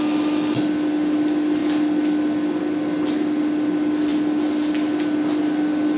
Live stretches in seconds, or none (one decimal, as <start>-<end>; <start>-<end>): 0.0-6.0